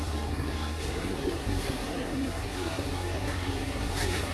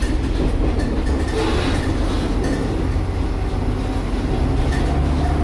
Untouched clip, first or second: second